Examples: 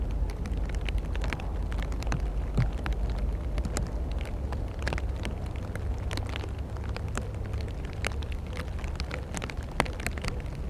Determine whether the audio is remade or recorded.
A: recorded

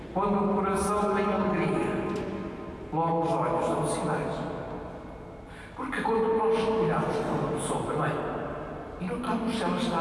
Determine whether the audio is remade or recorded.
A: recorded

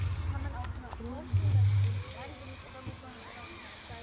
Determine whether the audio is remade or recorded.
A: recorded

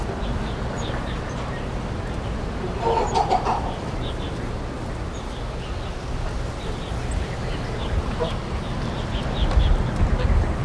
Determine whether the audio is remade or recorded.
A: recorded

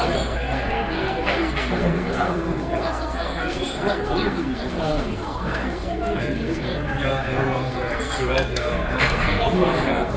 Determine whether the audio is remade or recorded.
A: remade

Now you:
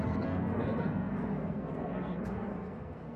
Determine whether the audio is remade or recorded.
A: remade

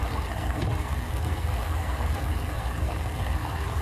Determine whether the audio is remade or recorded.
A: remade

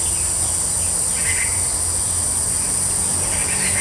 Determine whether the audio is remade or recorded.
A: recorded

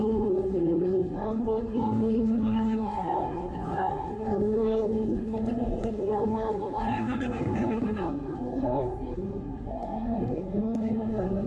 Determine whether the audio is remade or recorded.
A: remade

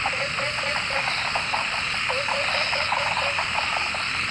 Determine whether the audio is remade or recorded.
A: recorded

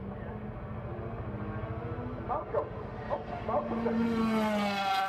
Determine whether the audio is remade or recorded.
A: recorded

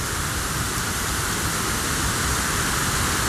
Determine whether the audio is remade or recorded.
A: recorded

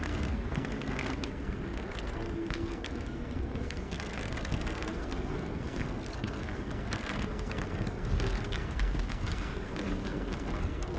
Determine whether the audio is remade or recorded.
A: remade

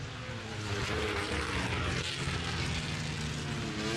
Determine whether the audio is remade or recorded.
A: recorded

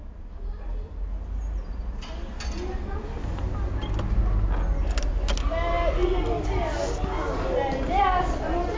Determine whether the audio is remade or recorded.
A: recorded